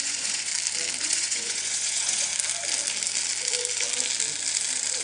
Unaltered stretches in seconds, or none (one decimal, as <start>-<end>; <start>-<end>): 0.5-1.0; 2.3-5.0